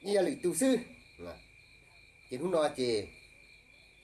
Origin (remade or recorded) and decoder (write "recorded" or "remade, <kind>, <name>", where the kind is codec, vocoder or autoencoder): remade, vocoder, BigVGAN v2